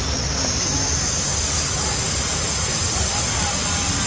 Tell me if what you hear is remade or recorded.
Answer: recorded